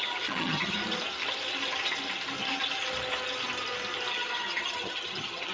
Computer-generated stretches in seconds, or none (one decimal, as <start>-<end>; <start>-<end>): 0.0-0.8; 4.1-5.5